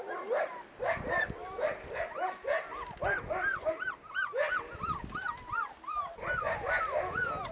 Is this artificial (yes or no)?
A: no